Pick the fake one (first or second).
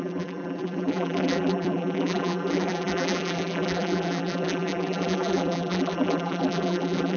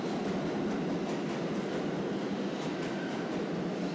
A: first